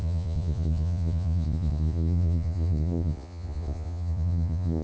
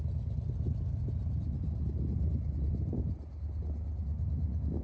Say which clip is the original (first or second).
second